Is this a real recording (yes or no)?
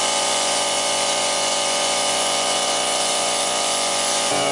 no